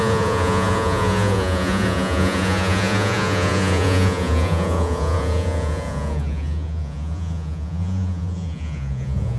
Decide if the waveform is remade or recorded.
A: remade